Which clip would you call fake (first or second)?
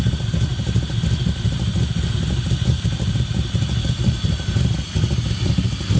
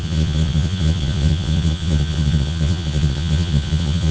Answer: second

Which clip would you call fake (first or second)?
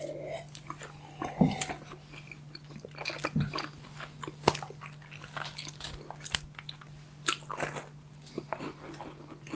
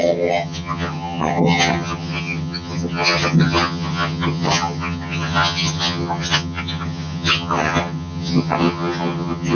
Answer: second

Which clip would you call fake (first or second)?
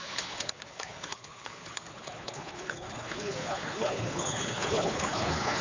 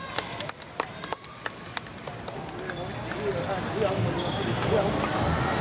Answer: first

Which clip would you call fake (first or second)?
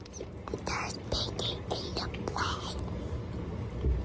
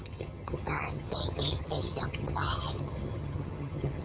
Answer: second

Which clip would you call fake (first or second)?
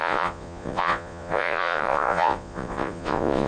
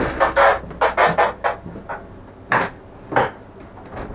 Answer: first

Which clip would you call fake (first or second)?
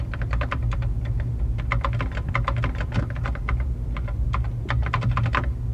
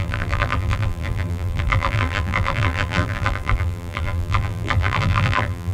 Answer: second